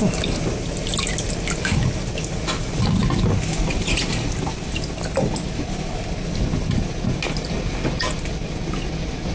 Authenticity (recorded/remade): recorded